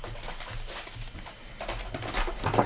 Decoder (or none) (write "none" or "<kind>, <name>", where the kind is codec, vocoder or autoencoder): none